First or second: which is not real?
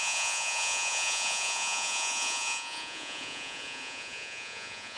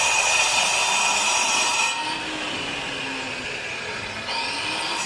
first